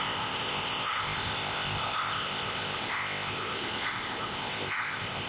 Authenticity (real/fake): fake